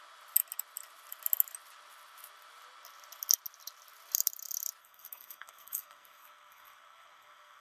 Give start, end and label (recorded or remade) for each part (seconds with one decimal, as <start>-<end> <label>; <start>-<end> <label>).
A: 0.0-4.8 recorded; 4.8-7.6 remade